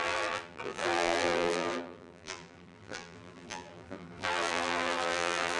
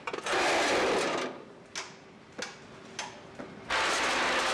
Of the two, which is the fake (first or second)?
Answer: first